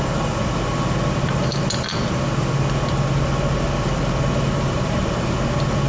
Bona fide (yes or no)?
yes